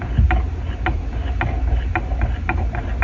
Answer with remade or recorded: recorded